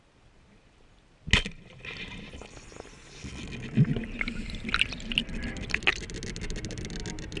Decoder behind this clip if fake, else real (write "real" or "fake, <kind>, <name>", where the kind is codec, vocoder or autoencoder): real